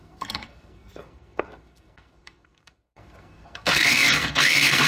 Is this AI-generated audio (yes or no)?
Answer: yes